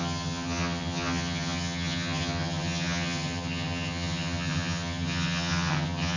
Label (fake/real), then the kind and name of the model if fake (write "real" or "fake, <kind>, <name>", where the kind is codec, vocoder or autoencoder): fake, vocoder, HiFi-GAN